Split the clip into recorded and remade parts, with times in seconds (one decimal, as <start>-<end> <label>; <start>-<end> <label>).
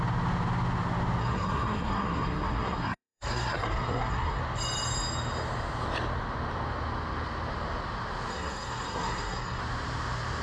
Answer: 0.0-1.2 recorded; 1.2-4.4 remade; 4.4-8.3 recorded; 8.3-9.6 remade; 9.6-10.4 recorded